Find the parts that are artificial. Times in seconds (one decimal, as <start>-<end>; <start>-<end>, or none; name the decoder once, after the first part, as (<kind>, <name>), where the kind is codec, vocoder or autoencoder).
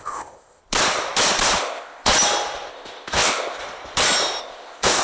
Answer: 0.0-0.6 (codec, ZipCodec); 1.6-2.1; 2.7-3.6; 4.4-5.0